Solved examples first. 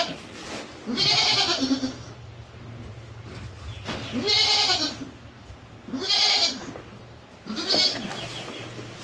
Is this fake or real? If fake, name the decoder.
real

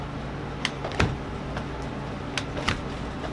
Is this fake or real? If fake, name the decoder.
real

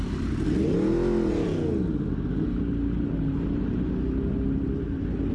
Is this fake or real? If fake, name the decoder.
real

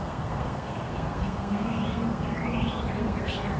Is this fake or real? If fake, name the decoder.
fake, codec, SNAC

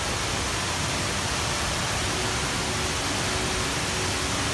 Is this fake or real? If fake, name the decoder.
real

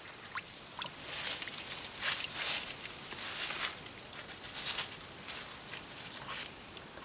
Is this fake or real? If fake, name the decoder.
real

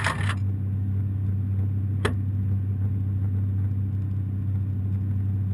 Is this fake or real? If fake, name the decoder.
real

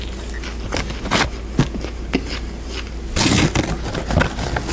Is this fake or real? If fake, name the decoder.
real